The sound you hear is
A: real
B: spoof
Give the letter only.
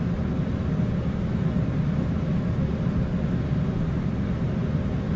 A